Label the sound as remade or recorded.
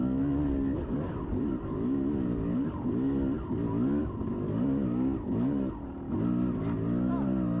recorded